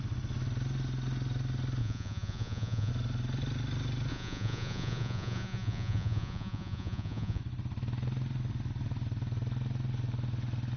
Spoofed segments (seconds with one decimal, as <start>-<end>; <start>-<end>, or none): 1.8-2.9; 4.1-7.4